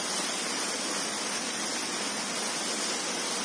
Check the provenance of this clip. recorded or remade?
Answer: recorded